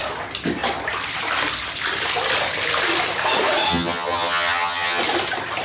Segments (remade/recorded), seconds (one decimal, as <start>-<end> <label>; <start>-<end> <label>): 0.0-3.7 recorded; 3.7-5.0 remade; 5.0-5.6 recorded